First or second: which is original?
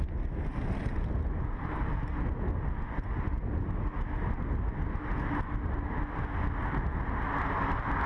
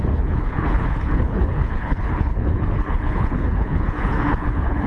first